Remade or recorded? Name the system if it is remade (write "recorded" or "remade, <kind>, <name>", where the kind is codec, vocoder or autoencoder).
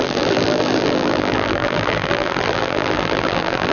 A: remade, vocoder, BigVGAN v2